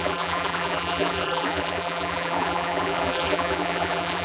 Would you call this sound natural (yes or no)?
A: no